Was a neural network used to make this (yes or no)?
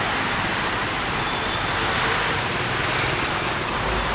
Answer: no